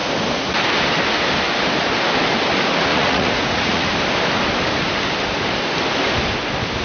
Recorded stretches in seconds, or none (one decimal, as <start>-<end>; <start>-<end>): 0.0-2.9; 3.9-6.8